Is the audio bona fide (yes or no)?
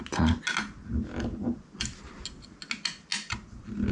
yes